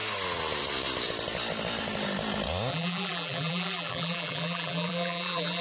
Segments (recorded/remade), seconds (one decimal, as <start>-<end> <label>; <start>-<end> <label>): 0.0-2.7 recorded; 2.7-5.6 remade